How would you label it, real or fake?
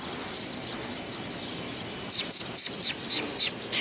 fake